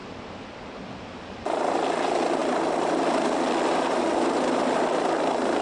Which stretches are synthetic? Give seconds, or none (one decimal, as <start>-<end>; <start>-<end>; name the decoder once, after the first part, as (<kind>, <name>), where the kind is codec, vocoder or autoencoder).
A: none